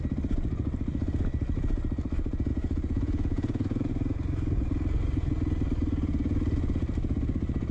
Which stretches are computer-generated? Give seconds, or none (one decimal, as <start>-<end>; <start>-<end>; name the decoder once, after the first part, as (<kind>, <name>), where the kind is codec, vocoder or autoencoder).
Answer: 2.5-3.9 (vocoder, Vocos)

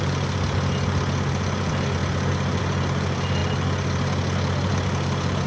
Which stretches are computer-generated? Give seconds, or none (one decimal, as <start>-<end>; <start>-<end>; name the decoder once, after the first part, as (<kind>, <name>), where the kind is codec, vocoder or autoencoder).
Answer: none

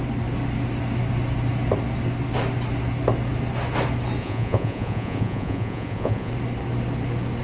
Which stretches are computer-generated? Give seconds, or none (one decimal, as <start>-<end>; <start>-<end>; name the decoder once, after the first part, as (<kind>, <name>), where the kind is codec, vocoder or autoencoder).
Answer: 4.2-6.3 (vocoder, Vocos)

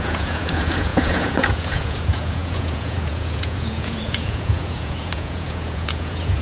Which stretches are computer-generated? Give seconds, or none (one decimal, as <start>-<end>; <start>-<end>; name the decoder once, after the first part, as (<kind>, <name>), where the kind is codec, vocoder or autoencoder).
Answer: 0.0-6.4 (vocoder, Vocos)

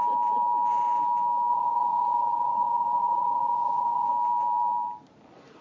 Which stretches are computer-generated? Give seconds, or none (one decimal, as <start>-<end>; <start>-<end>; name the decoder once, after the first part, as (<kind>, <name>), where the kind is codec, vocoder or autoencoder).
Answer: 1.5-4.1 (vocoder, Vocos)

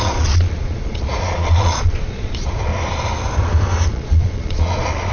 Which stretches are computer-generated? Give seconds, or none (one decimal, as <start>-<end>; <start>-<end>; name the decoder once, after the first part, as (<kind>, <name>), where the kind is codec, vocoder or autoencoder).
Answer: 0.0-2.7 (vocoder, Vocos); 3.9-5.1